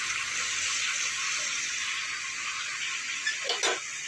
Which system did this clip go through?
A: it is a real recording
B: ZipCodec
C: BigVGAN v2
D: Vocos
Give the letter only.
A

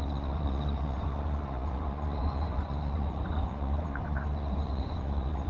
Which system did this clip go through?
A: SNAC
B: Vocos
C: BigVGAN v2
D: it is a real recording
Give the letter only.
B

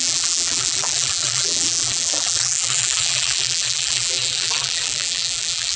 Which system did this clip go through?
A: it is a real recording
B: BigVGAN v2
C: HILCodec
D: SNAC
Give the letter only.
B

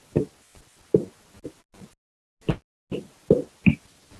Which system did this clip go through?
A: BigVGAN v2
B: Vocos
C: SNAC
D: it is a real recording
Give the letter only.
D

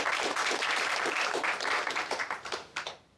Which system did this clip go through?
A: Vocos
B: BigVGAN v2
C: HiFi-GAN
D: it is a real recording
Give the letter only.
B